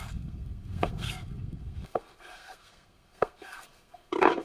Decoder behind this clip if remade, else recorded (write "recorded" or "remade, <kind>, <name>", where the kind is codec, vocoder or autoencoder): remade, codec, SNAC